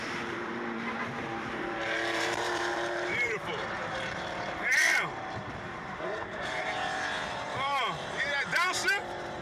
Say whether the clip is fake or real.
fake